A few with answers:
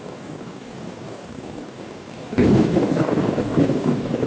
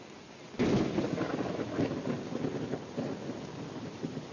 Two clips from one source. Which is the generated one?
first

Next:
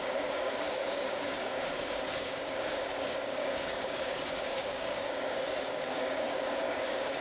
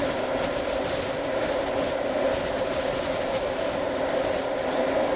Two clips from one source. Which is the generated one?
first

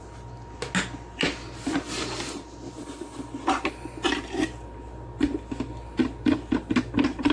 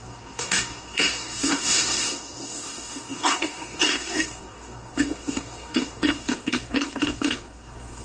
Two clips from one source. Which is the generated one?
second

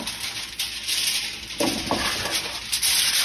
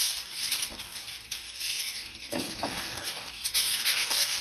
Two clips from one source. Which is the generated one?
second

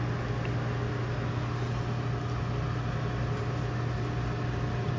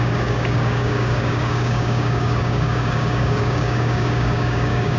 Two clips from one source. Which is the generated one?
second